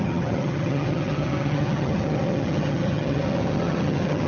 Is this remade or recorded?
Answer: remade